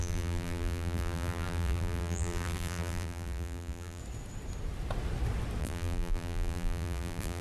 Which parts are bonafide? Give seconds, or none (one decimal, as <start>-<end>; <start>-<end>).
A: 4.0-5.6